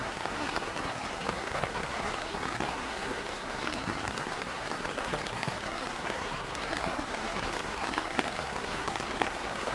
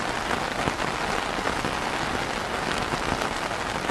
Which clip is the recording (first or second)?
second